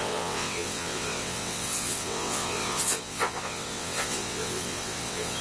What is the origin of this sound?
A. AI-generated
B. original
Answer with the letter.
A